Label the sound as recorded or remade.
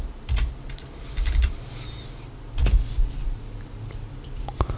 recorded